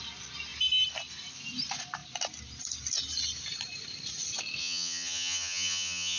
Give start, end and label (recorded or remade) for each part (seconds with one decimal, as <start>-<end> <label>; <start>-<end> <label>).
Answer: 0.0-4.6 recorded; 4.6-6.2 remade